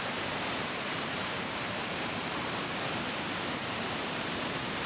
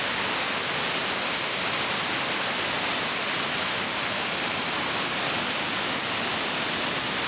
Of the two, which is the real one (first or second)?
second